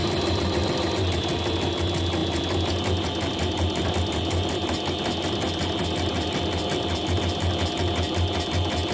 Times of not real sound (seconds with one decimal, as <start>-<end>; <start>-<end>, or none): 0.0-1.3